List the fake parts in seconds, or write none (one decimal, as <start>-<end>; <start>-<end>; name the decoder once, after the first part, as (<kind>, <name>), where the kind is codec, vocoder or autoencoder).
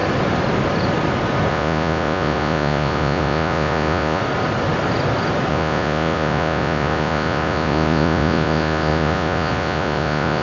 1.5-4.2 (vocoder, Vocos); 5.5-10.4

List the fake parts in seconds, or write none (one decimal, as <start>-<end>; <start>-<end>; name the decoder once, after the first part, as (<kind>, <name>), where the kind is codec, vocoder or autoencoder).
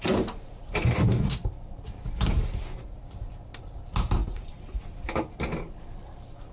4.2-4.8 (vocoder, Vocos)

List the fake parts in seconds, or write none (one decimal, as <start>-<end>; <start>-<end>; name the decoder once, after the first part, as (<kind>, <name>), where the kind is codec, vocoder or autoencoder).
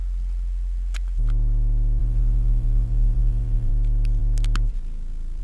2.0-3.7 (vocoder, Vocos)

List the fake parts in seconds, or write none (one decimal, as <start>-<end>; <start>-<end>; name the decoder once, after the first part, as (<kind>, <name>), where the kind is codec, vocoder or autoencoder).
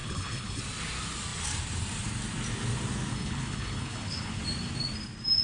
0.0-0.6 (codec, HILCodec); 3.1-4.4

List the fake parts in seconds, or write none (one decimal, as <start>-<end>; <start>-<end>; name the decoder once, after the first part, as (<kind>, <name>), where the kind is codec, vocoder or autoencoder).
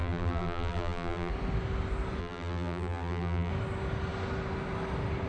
0.0-1.3 (vocoder, BigVGAN v2); 2.2-3.5